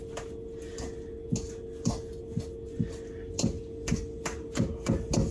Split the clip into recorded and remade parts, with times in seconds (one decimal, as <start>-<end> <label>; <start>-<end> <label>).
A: 0.0-5.3 recorded

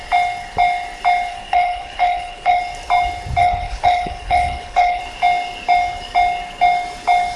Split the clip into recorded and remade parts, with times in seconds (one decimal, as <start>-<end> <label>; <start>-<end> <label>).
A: 0.0-1.3 recorded; 1.3-2.6 remade; 2.6-3.4 recorded; 3.4-5.0 remade; 5.0-7.4 recorded

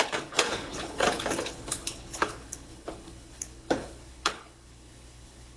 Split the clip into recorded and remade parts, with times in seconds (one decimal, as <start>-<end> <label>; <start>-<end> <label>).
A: 0.0-5.6 remade

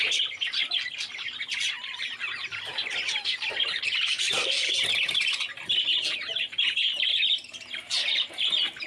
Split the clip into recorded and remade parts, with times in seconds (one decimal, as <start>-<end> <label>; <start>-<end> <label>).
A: 0.0-8.9 recorded

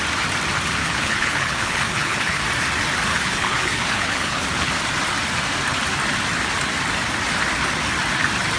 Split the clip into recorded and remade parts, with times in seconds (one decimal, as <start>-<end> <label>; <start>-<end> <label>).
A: 0.0-0.8 recorded; 0.8-2.4 remade; 2.4-3.1 recorded; 3.1-4.7 remade; 4.7-8.6 recorded

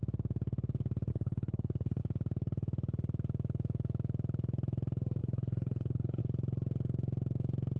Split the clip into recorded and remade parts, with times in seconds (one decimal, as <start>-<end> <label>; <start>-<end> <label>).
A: 0.0-1.1 recorded; 1.1-2.0 remade; 2.0-5.2 recorded; 5.2-6.2 remade; 6.2-7.8 recorded

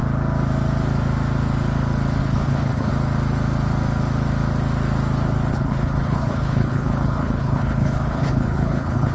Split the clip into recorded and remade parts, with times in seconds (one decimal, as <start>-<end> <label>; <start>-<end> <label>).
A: 0.0-2.2 recorded; 2.2-2.9 remade; 2.9-5.5 recorded; 5.5-9.1 remade